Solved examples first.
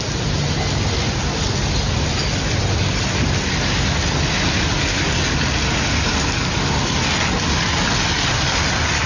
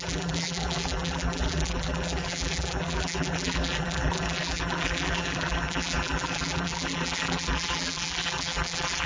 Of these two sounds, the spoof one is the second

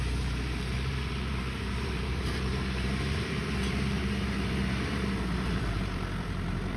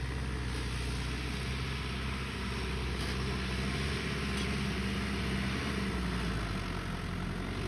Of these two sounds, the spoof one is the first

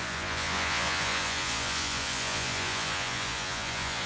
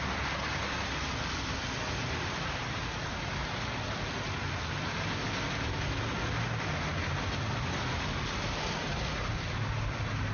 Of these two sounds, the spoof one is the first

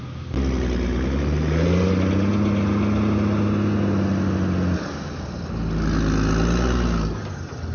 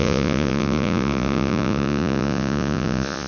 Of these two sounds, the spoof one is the second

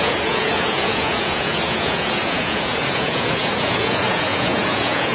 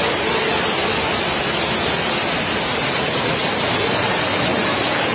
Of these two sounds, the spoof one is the first